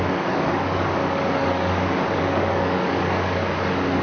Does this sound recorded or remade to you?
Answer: remade